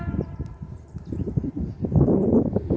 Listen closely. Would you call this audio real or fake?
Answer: real